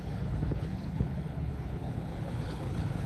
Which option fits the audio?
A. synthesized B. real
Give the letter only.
A